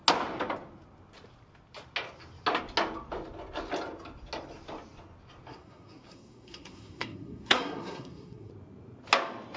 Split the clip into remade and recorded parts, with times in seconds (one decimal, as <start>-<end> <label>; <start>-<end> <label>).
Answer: 0.0-5.5 recorded; 5.5-8.5 remade; 8.5-9.6 recorded